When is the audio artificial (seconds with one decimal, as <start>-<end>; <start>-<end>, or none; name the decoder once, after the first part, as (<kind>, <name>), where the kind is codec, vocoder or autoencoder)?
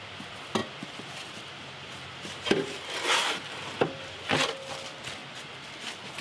0.6-4.3 (vocoder, BigVGAN v2); 5.2-5.7